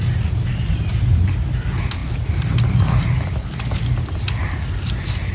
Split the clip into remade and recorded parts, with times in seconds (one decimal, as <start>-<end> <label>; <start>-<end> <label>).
0.0-5.3 recorded